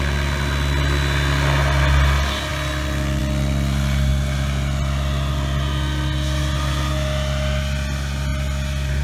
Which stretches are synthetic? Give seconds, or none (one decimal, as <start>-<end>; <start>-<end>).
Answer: none